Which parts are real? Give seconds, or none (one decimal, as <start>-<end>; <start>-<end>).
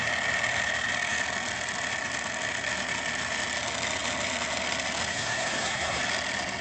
0.0-5.1; 6.0-6.6